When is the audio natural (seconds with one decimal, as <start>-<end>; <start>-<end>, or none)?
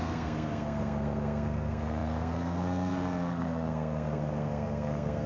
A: none